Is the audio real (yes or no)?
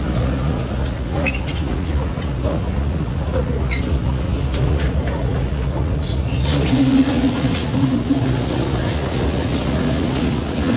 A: no